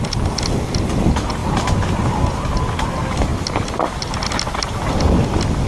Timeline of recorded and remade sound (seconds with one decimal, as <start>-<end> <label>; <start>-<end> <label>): 0.0-5.7 recorded